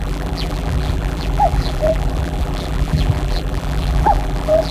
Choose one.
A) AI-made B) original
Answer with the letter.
A